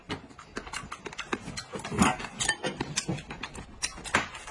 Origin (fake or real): real